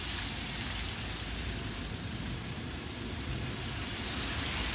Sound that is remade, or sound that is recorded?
recorded